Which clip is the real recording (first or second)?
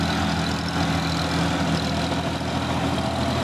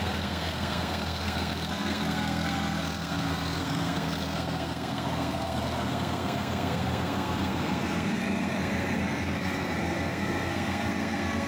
first